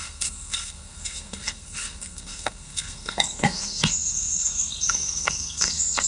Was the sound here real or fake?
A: fake